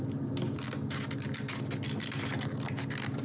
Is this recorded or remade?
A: recorded